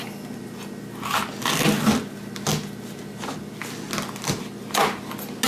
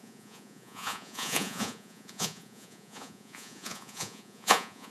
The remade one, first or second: second